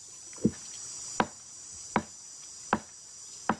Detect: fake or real real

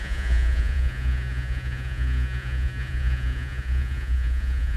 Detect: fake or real fake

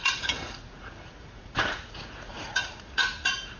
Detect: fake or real fake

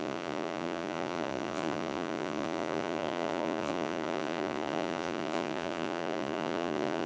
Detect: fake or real fake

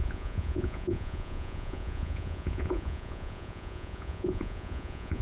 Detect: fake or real fake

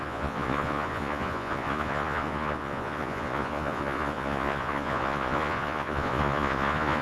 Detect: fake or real fake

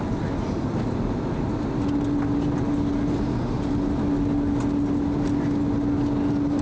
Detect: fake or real real